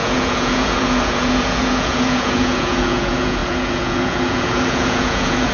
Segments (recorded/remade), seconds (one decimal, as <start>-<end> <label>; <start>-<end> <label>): 0.0-5.5 remade